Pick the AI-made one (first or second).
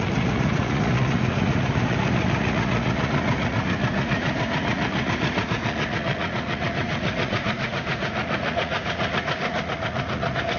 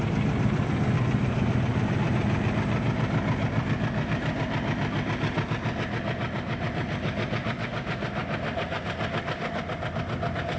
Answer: first